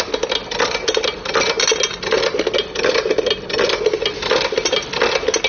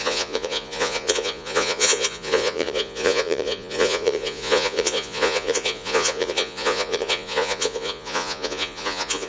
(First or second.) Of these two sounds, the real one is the first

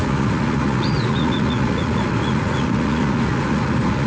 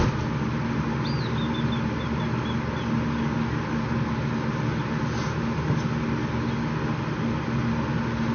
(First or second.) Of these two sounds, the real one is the second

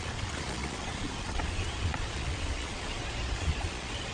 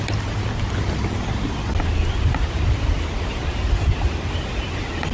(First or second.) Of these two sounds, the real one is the second